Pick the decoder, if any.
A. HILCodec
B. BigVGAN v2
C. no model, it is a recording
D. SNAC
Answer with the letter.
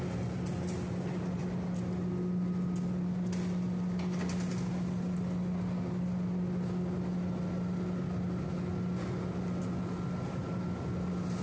C